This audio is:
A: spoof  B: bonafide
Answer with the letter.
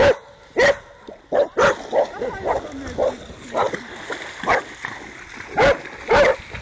B